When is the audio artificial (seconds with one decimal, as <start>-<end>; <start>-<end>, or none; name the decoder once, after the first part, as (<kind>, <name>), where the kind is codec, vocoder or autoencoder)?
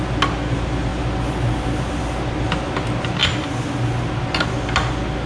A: none